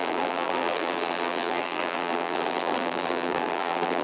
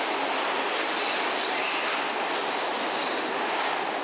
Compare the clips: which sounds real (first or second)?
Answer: second